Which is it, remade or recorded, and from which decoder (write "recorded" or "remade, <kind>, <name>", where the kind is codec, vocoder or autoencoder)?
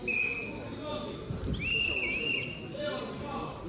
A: recorded